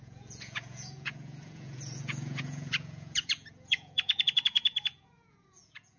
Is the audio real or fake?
fake